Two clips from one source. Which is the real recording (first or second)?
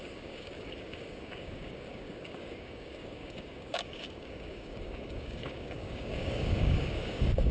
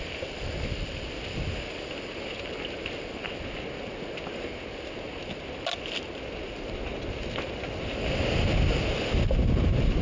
second